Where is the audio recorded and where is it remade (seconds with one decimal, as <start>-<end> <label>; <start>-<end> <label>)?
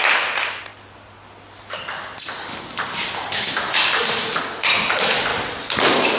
0.0-6.2 recorded